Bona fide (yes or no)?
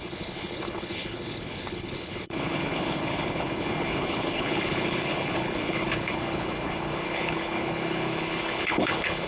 no